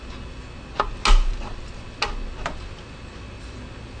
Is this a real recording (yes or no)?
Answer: yes